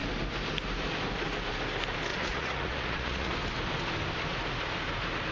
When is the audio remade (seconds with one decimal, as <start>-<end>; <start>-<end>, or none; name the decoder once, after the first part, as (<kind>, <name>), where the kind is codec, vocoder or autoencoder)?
2.1-3.3 (vocoder, Vocos)